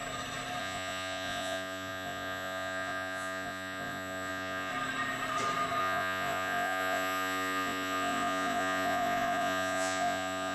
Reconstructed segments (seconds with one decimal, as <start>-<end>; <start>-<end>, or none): 0.6-4.7; 5.8-10.5